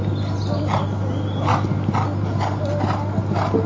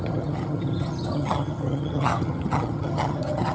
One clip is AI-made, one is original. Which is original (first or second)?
first